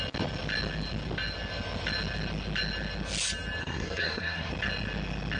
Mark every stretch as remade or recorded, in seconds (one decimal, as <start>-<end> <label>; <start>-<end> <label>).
0.0-3.6 recorded; 3.6-4.5 remade; 4.5-5.4 recorded